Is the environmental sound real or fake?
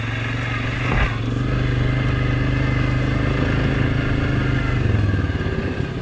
real